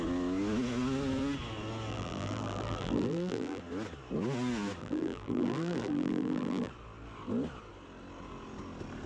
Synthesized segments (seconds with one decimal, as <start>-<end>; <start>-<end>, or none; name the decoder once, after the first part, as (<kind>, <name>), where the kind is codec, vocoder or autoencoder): 1.9-3.6 (vocoder, BigVGAN v2); 4.8-6.7